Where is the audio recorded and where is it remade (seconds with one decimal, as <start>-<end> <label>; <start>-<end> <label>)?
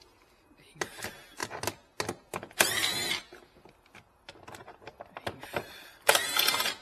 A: 0.0-4.9 recorded; 4.9-6.1 remade; 6.1-6.8 recorded